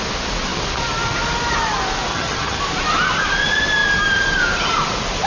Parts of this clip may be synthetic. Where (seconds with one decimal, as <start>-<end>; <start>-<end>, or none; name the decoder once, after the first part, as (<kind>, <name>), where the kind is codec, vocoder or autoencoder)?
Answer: 2.1-2.6 (vocoder, HiFi-GAN)